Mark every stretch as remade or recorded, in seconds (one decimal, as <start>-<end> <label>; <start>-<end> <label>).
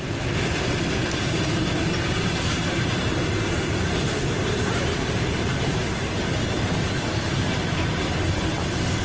0.0-9.0 recorded